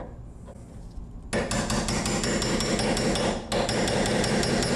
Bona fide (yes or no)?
yes